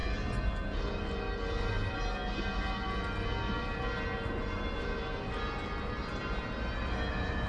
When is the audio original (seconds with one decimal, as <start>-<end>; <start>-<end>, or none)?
0.0-7.5